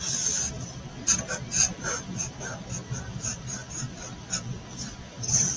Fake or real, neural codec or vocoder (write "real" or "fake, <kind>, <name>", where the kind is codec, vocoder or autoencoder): real